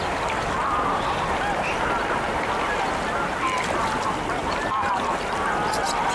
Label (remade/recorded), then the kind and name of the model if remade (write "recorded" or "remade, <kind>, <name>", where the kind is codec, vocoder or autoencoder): recorded